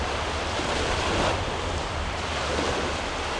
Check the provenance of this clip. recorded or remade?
recorded